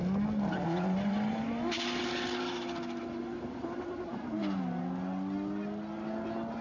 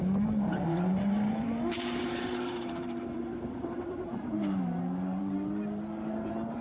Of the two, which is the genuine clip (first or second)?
first